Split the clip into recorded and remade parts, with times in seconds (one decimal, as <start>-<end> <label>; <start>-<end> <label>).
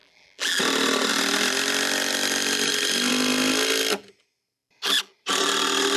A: 0.0-0.6 remade; 0.6-6.0 recorded